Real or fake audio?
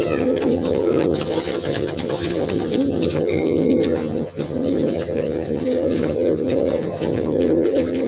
fake